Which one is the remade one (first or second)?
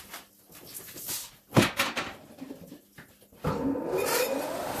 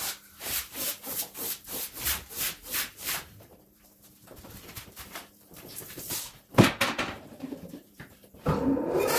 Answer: second